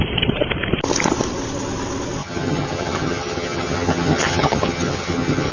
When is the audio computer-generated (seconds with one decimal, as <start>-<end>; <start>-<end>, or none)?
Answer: 2.2-5.5